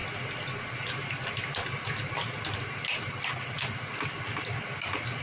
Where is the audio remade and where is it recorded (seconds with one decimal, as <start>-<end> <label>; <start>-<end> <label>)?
0.0-5.2 recorded

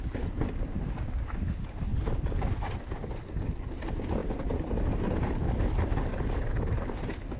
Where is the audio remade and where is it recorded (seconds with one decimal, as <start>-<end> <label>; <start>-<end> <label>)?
0.0-1.9 recorded; 1.9-2.9 remade; 2.9-4.2 recorded; 4.2-4.7 remade; 4.7-7.4 recorded

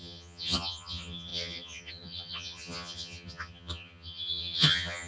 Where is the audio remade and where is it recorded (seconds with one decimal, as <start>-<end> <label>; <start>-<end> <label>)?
0.0-5.1 remade

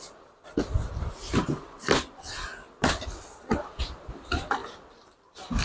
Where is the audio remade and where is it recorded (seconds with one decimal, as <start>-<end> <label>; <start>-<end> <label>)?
0.0-5.6 recorded

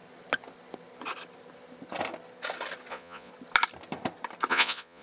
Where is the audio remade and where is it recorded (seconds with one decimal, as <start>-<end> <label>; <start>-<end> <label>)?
0.0-2.9 recorded; 2.9-3.3 remade; 3.3-4.5 recorded; 4.5-5.0 remade

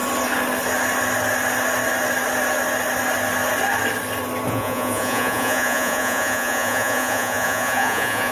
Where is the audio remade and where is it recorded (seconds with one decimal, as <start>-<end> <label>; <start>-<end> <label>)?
0.0-4.5 recorded; 4.5-8.3 remade

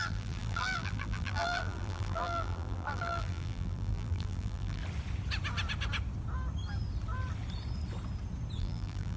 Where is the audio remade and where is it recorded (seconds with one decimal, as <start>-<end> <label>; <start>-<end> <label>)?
0.0-4.8 remade; 4.8-8.6 recorded; 8.6-9.2 remade

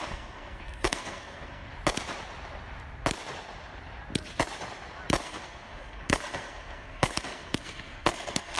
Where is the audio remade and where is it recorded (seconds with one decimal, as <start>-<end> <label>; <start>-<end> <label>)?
0.0-1.7 remade; 1.7-5.2 recorded; 5.2-8.6 remade